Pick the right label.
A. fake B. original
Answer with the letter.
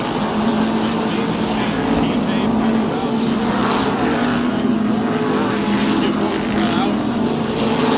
B